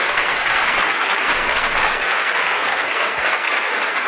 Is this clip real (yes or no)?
no